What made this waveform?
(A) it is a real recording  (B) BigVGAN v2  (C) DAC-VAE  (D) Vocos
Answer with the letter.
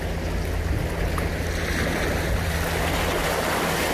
A